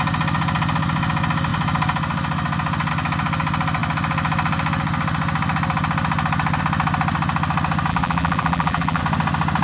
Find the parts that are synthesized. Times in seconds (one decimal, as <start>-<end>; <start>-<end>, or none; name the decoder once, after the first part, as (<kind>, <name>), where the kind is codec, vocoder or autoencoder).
7.9-9.0 (vocoder, BigVGAN v2)